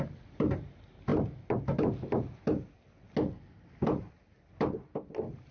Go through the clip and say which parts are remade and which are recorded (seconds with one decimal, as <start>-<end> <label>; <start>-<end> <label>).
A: 0.0-5.5 recorded